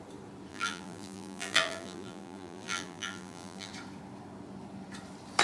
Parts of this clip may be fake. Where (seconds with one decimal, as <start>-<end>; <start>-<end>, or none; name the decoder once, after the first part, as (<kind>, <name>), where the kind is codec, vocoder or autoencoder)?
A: 0.5-3.7 (vocoder, BigVGAN v2)

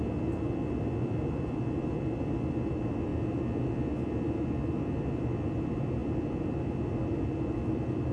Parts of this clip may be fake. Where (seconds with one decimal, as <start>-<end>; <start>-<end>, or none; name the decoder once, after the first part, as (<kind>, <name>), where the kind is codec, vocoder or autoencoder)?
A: 0.0-3.1 (vocoder, BigVGAN v2); 5.0-8.1

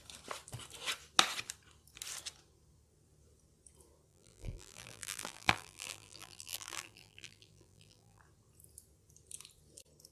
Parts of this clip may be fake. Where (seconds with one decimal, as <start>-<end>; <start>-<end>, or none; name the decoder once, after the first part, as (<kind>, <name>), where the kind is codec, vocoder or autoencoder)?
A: 4.1-8.2 (vocoder, BigVGAN v2)

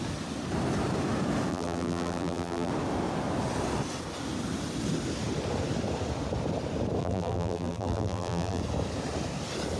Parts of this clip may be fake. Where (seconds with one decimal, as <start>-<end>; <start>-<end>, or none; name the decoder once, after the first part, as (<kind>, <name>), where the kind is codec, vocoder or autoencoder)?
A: 1.5-2.7 (vocoder, BigVGAN v2); 7.0-8.6

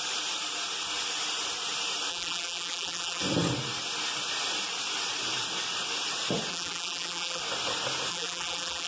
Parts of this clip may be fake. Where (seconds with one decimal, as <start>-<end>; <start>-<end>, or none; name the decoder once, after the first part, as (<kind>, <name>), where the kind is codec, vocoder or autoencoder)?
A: 2.1-3.2 (vocoder, BigVGAN v2); 6.5-7.4; 8.1-8.9

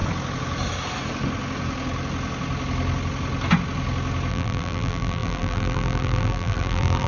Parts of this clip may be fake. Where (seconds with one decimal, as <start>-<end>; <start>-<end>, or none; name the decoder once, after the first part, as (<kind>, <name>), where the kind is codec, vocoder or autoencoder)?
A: 4.3-7.1 (vocoder, BigVGAN v2)